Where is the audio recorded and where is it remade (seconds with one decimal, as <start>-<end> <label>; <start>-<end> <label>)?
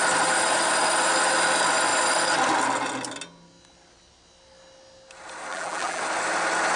0.0-5.5 recorded; 5.5-6.0 remade; 6.0-6.8 recorded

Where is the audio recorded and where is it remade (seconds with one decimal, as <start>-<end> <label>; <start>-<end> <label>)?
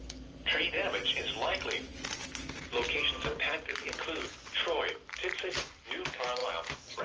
0.0-7.0 recorded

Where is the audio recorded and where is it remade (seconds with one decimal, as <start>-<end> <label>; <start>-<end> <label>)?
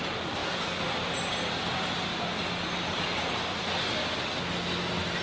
0.0-5.2 recorded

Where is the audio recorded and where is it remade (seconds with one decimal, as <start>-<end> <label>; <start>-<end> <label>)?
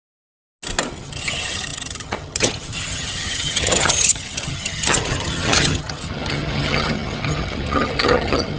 0.0-0.9 recorded; 0.9-8.6 remade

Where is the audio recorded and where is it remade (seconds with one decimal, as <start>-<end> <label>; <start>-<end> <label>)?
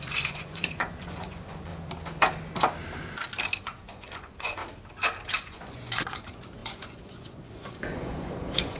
0.0-1.7 remade; 1.7-3.6 recorded; 3.6-4.6 remade; 4.6-5.3 recorded; 5.3-8.8 remade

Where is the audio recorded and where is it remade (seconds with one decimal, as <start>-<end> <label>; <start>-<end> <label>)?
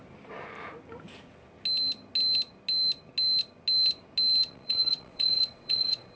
0.0-4.4 recorded; 4.4-6.2 remade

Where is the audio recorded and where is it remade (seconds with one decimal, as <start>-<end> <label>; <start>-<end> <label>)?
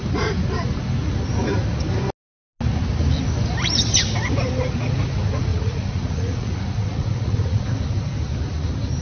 0.0-5.5 recorded; 5.5-7.6 remade; 7.6-9.0 recorded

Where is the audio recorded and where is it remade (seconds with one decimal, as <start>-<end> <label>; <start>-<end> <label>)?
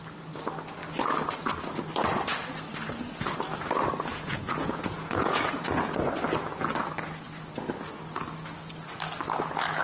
0.0-4.1 recorded; 4.1-6.1 remade; 6.1-9.8 recorded